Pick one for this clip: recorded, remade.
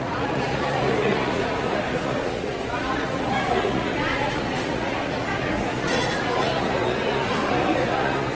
remade